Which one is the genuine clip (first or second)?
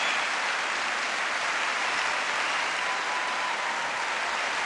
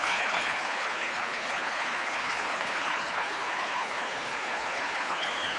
first